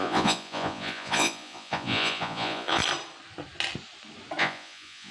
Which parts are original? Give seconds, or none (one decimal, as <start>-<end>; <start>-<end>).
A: 2.8-4.4

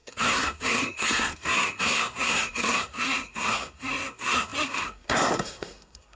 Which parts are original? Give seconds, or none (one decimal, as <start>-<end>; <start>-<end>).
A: none

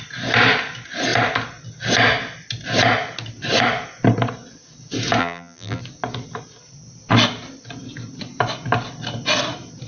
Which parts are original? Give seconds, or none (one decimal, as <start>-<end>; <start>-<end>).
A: 0.0-5.2; 5.8-9.9

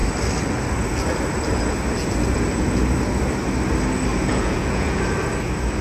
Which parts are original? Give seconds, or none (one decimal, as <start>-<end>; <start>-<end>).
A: 0.0-4.1; 5.0-5.8

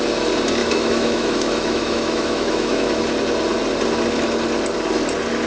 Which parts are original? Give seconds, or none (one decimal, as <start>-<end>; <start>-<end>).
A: 0.0-0.6; 3.0-5.5